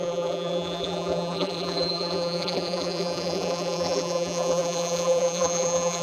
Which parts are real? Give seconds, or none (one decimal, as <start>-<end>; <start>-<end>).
none